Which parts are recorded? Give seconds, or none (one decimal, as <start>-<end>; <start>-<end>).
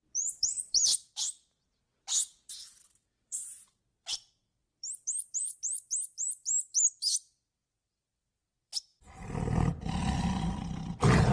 none